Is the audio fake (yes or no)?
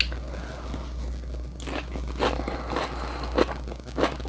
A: no